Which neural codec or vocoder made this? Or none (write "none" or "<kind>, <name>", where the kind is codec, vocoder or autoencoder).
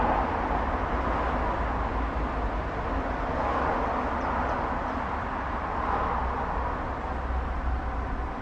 none